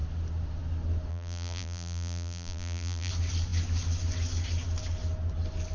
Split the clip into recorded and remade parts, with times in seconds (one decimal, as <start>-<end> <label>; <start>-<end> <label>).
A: 0.0-1.1 recorded; 1.1-3.1 remade; 3.1-5.7 recorded